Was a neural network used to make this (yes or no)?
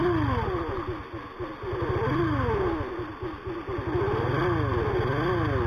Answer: no